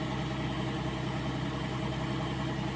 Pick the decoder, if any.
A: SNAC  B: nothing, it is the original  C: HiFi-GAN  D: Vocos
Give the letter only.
B